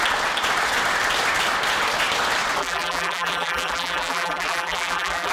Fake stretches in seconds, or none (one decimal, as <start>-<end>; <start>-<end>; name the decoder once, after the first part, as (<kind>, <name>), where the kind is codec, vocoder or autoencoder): 2.6-5.3 (vocoder, BigVGAN v2)